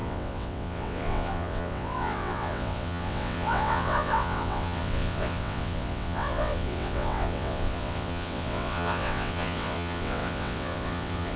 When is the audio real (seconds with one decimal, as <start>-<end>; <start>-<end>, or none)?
none